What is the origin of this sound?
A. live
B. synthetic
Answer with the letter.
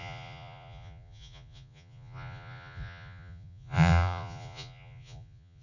B